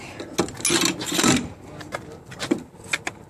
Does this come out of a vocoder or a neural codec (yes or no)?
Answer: no